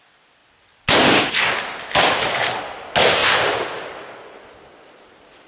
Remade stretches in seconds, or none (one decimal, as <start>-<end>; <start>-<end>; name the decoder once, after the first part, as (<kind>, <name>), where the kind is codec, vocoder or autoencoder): none

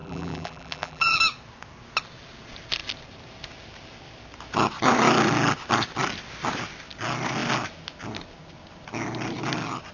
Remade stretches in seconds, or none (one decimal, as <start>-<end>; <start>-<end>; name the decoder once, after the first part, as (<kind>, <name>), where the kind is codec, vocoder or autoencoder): 0.0-1.2 (vocoder, BigVGAN v2)

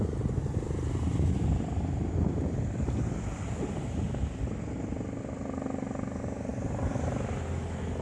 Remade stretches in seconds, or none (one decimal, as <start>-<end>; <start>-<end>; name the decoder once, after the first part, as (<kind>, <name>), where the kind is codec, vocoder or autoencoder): 0.4-5.2 (vocoder, BigVGAN v2); 6.5-7.5